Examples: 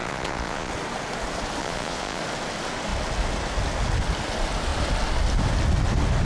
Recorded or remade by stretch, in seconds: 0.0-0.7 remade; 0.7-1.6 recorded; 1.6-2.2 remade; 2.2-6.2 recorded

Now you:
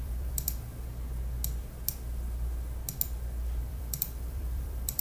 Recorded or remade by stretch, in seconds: 0.0-0.7 remade; 0.7-3.6 recorded; 3.6-5.0 remade

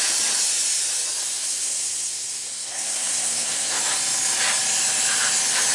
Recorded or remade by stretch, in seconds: 0.0-1.2 recorded; 1.2-3.8 remade; 3.8-5.7 recorded

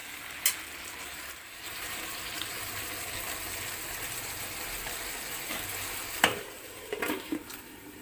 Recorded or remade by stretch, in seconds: 0.0-1.0 recorded; 1.0-8.0 remade